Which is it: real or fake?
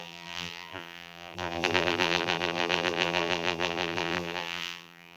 fake